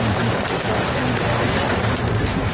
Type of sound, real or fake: real